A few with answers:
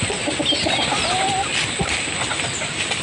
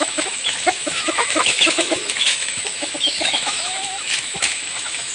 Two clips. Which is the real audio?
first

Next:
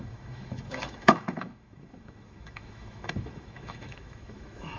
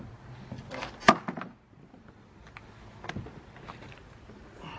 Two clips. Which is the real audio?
second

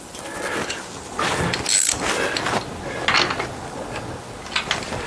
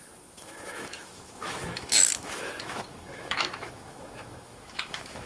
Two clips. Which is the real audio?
first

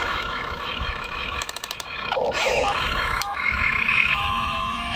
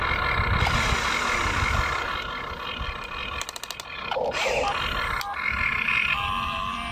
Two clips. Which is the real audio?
second